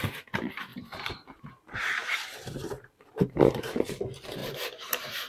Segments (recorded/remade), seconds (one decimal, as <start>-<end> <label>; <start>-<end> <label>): 0.0-0.7 recorded; 0.7-1.5 remade; 1.5-2.0 recorded; 2.0-3.6 remade; 3.6-4.4 recorded; 4.4-5.3 remade